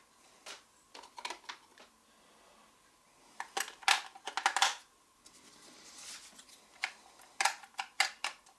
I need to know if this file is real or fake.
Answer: real